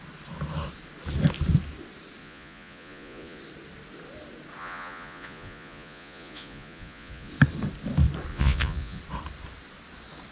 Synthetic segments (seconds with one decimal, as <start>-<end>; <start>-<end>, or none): 2.2-3.4; 4.6-7.3; 8.3-9.0